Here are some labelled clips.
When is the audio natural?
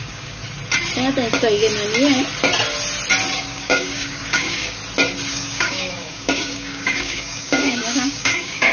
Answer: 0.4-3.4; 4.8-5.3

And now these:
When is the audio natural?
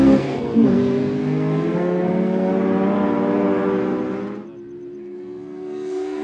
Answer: 2.5-5.0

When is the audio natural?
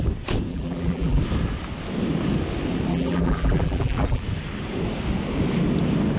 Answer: 0.0-0.5; 1.2-2.9; 4.2-6.2